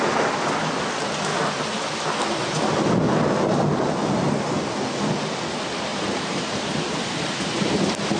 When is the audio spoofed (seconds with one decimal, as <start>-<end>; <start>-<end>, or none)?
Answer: 5.9-8.2